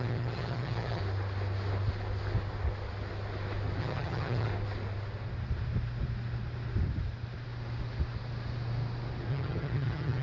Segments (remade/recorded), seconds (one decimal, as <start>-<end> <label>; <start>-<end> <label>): 0.0-1.0 remade; 1.0-3.8 recorded; 3.8-4.5 remade; 4.5-9.3 recorded; 9.3-10.2 remade